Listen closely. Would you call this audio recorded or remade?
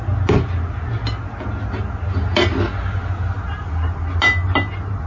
recorded